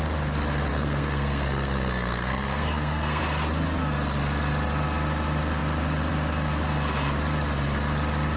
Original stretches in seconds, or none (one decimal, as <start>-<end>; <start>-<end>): 0.0-0.7; 3.2-8.4